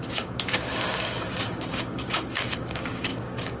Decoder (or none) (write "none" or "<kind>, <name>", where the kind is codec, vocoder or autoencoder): codec, DAC